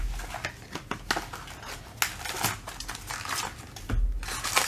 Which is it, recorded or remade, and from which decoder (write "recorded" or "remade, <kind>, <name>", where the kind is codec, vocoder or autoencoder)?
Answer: recorded